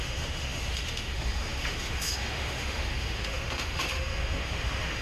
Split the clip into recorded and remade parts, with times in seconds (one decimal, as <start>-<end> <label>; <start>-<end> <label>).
0.0-5.0 remade